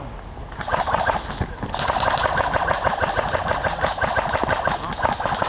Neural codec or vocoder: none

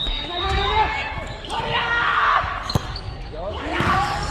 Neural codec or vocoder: codec, DAC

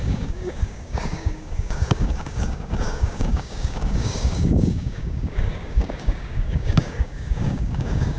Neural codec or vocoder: codec, DAC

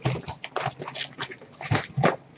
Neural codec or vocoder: none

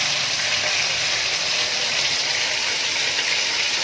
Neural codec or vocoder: none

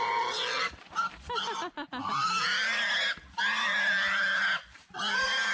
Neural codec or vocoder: none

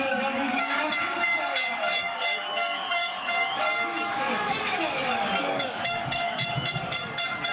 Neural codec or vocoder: codec, DAC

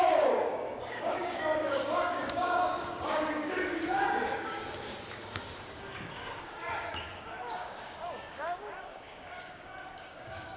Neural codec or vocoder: codec, DAC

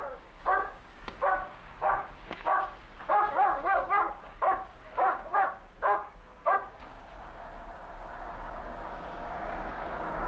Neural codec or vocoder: codec, DAC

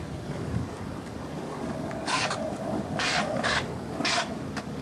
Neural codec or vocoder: codec, DAC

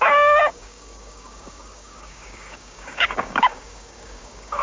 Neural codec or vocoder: codec, DAC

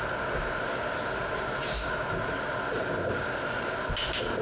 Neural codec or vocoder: none